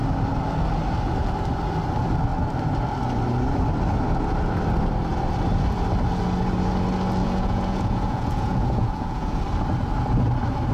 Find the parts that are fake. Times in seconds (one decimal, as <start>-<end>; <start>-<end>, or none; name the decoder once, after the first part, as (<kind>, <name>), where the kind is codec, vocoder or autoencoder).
7.2-9.4 (vocoder, Vocos)